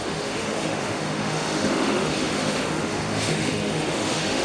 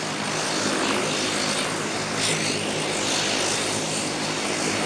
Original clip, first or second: second